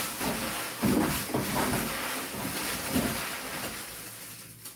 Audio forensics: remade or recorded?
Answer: recorded